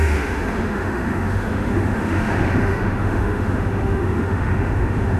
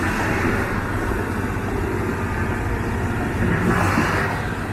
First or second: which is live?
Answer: second